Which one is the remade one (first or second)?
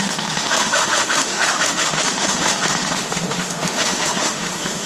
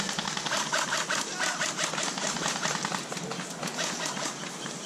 first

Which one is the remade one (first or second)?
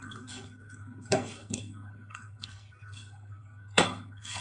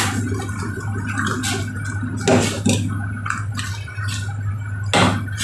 first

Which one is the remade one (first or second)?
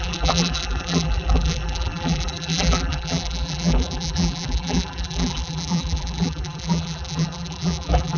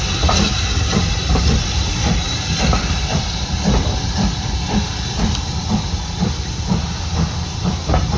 first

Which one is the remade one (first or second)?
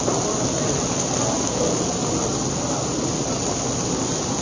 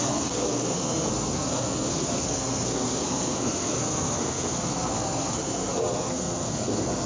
second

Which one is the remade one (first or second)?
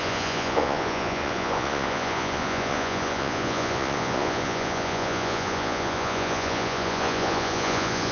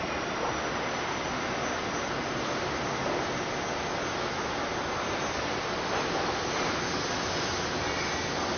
first